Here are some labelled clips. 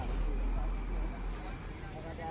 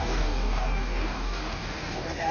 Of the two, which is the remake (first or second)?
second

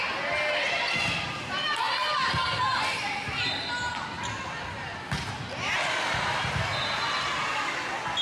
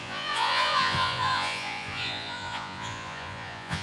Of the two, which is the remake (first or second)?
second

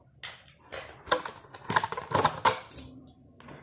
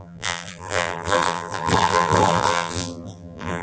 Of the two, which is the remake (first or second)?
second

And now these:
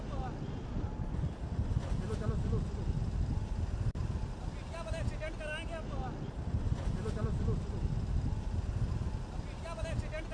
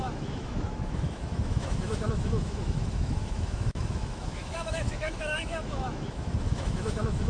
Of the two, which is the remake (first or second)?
second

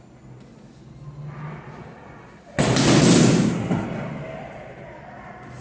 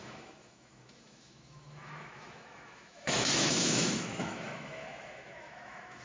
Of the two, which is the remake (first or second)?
second